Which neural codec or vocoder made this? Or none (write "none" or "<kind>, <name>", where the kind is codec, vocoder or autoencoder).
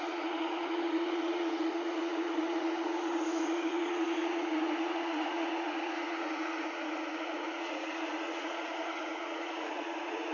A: vocoder, Vocos